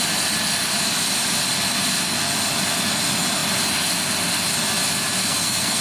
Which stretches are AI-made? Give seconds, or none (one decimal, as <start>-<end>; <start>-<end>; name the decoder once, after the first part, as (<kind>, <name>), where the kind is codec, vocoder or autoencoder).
5.2-5.8 (codec, SNAC)